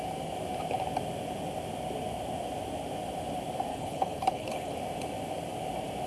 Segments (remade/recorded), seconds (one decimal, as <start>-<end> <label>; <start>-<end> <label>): 0.0-3.7 recorded; 3.7-4.8 remade; 4.8-6.1 recorded